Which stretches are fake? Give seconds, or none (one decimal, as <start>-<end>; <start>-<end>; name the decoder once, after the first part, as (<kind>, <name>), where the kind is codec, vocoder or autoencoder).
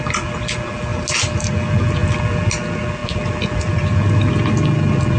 3.0-4.3 (vocoder, BigVGAN v2)